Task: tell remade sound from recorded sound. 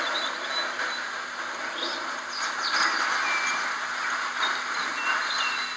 recorded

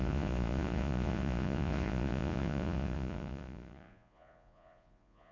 remade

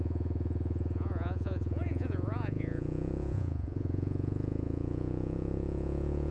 remade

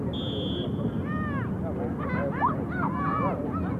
recorded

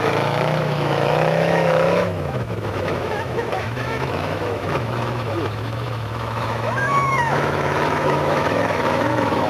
remade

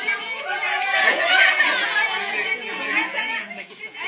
remade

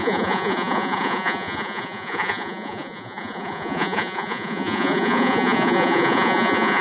remade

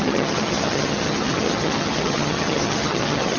remade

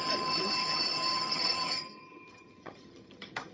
remade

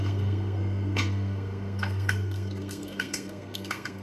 remade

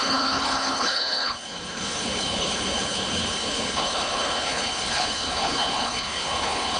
remade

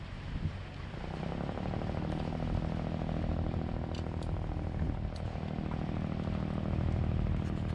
recorded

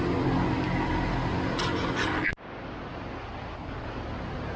recorded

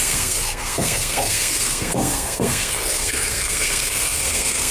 remade